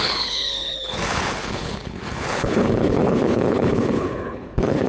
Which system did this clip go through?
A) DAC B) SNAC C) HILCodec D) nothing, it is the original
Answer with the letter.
C